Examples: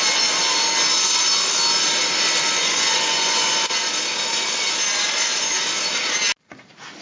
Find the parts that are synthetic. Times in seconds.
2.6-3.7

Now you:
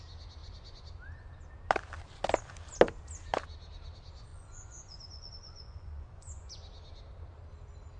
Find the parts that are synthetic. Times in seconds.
4.3-6.6

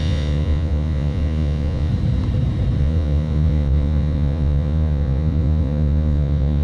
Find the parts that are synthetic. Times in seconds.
0.0-1.9; 2.8-6.6